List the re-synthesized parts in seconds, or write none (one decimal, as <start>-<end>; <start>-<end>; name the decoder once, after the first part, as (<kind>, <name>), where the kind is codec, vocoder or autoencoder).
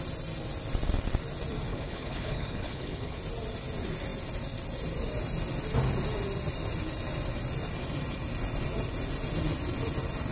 1.7-3.2 (codec, HILCodec)